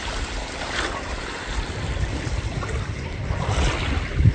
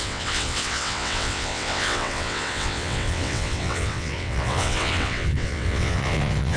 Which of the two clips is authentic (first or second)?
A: first